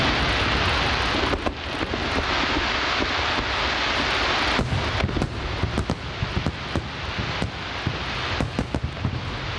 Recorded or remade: recorded